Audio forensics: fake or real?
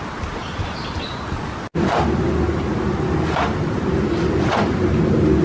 real